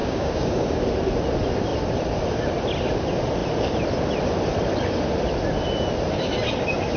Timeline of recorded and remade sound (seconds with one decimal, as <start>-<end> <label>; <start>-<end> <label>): 0.0-0.8 remade; 0.8-7.0 recorded